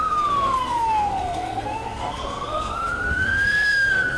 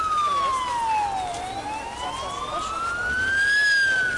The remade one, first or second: first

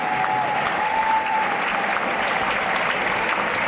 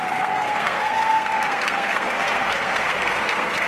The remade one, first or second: second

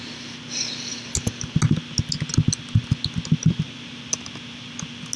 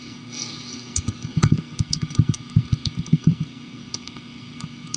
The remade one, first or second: second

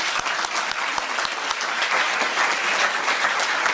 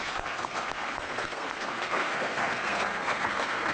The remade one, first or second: second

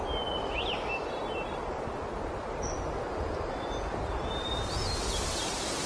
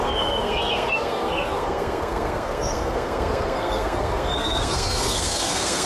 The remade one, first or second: second